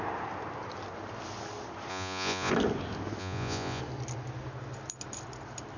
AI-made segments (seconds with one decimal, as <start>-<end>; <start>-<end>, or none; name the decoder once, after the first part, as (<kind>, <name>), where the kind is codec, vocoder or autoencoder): 1.9-2.5 (vocoder, Vocos); 3.2-3.8